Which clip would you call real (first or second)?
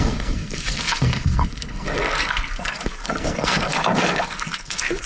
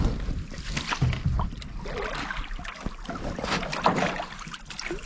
second